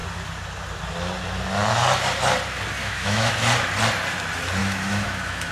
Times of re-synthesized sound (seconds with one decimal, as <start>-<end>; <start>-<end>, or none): 2.8-3.3; 4.6-5.5